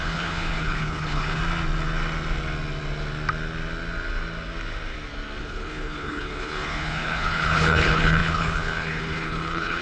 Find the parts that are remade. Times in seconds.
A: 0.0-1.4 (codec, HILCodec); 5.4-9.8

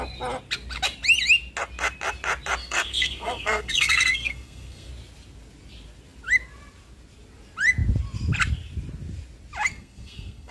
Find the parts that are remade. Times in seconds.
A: 2.6-4.9 (codec, SNAC); 9.7-10.5